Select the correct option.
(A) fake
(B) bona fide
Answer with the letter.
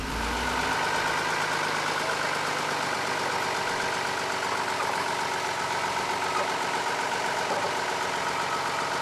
B